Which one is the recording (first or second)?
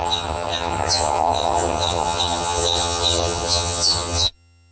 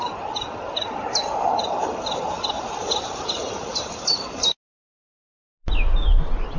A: second